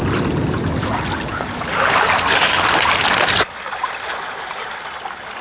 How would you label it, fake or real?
real